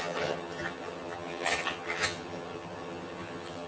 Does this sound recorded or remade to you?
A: remade